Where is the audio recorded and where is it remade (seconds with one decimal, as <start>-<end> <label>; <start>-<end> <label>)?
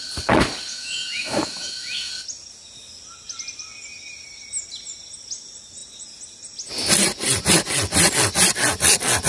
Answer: 0.0-0.7 recorded; 0.7-2.1 remade; 2.1-9.3 recorded